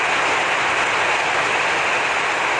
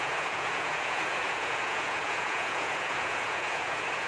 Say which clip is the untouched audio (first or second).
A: first